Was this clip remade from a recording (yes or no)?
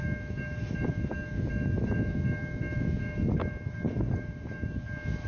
yes